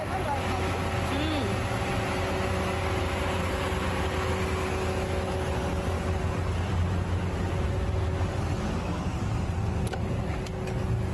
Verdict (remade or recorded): recorded